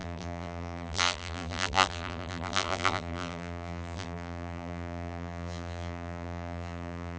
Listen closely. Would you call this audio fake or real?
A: fake